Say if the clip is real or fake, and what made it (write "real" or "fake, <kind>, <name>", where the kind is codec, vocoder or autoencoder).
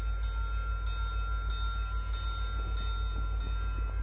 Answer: real